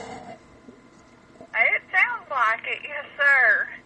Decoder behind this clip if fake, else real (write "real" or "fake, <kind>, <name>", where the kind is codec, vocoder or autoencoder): real